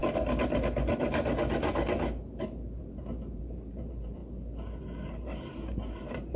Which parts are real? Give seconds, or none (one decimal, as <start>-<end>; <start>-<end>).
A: 0.0-2.8; 4.2-4.8